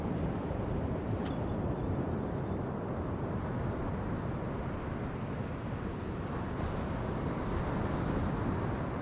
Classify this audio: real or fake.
real